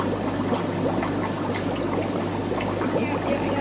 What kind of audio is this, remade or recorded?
recorded